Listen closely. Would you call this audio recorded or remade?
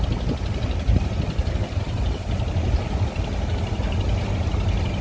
recorded